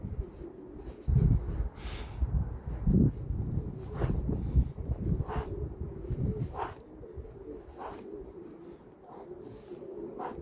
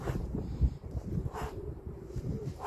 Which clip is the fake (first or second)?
second